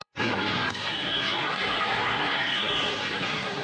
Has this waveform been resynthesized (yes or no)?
yes